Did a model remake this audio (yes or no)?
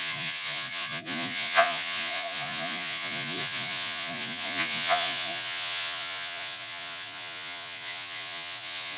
yes